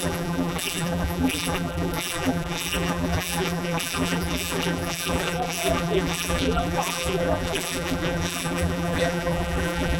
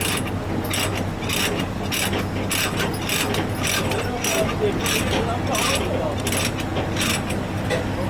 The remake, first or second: first